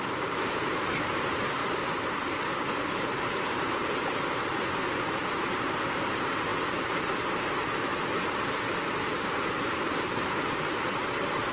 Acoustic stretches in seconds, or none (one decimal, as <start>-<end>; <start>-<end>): 1.6-3.2